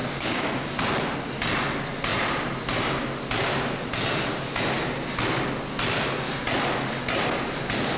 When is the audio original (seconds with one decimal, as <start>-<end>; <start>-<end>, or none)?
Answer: 0.7-8.0